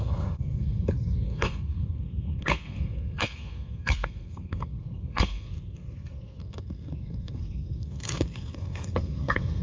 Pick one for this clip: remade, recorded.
remade